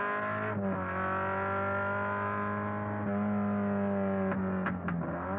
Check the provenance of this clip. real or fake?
real